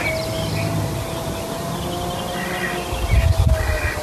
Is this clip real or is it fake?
real